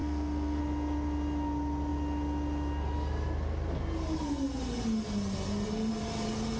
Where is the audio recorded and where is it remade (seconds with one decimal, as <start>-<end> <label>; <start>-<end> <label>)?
0.0-0.6 remade; 0.6-6.6 recorded